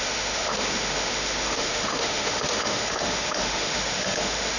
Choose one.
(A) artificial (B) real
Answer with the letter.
A